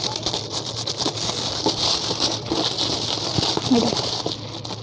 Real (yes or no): yes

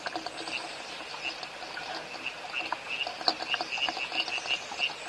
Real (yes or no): yes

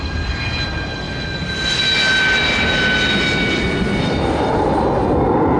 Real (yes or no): yes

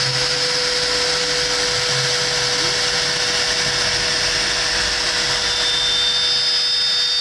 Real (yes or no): yes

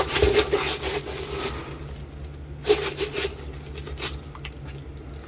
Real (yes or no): yes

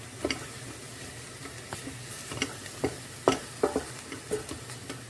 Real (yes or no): yes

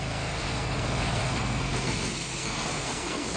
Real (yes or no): no